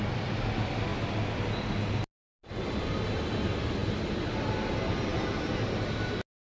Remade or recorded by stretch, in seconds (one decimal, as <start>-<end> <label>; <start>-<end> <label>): 0.0-6.5 recorded

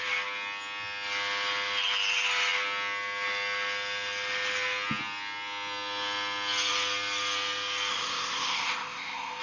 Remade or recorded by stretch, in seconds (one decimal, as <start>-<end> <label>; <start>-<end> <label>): 0.0-7.9 recorded; 7.9-9.4 remade

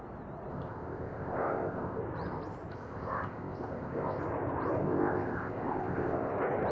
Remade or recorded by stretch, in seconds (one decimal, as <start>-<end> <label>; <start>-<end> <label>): 0.0-0.5 recorded; 0.5-2.0 remade; 2.0-2.7 recorded; 2.7-4.2 remade; 4.2-4.8 recorded; 4.8-6.3 remade; 6.3-6.7 recorded

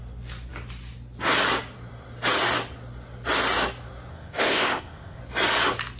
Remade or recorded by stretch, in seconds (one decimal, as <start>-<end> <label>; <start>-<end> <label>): 0.0-4.1 recorded; 4.1-5.2 remade; 5.2-6.0 recorded